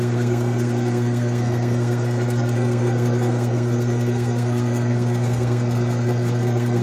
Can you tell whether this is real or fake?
fake